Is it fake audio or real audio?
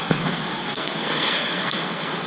fake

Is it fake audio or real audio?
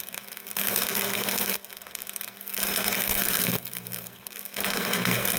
fake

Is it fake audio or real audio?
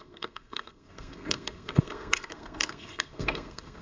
fake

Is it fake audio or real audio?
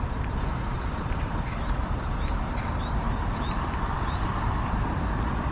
real